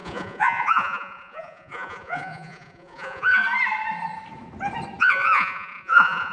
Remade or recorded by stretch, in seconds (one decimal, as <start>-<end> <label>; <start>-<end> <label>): 0.0-3.4 remade; 3.4-5.0 recorded; 5.0-6.3 remade